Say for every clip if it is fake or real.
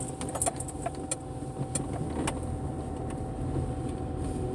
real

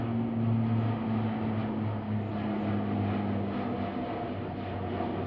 real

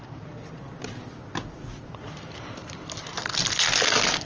real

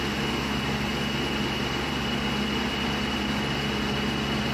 real